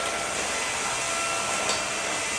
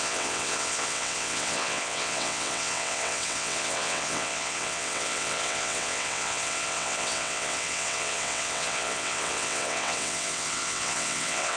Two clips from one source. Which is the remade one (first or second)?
second